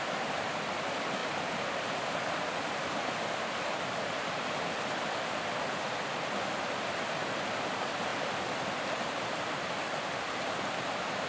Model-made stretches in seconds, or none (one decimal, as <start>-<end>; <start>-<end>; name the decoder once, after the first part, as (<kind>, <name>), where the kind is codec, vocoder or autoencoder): none